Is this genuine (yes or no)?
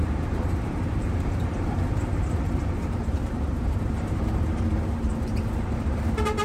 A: no